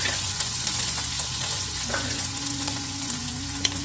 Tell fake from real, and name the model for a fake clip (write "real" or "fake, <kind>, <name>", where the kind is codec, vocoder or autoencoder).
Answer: fake, vocoder, Vocos